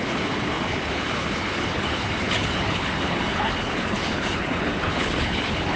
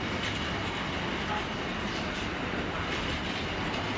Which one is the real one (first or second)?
second